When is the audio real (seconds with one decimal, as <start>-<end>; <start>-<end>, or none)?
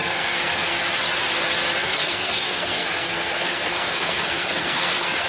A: 0.8-1.8